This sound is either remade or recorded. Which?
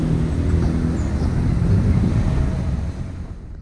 recorded